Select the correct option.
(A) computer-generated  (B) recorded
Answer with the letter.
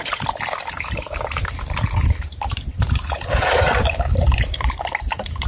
A